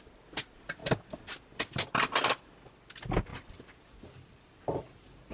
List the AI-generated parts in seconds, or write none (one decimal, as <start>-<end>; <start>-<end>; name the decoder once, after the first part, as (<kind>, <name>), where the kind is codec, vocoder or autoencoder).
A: 0.8-2.5 (vocoder, BigVGAN v2); 3.3-5.3